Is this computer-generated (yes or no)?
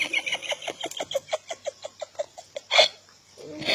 no